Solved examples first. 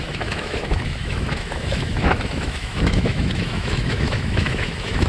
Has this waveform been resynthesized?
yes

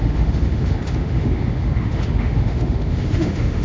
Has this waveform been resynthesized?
yes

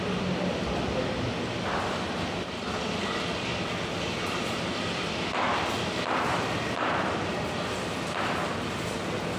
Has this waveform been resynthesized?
no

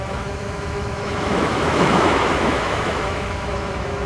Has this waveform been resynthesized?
yes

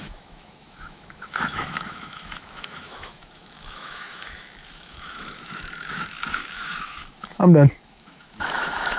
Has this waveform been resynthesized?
yes